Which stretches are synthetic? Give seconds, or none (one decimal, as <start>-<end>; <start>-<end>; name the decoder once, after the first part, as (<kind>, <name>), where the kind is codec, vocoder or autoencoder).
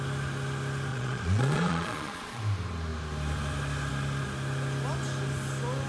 0.9-2.4 (vocoder, Vocos)